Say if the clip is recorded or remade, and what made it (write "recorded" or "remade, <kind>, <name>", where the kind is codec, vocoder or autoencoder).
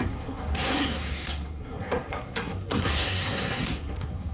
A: remade, codec, SNAC